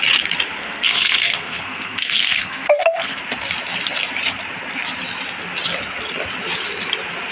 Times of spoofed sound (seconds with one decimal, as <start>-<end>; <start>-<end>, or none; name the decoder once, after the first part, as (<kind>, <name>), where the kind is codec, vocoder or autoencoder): 0.6-3.2 (codec, SNAC)